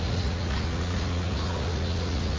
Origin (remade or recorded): remade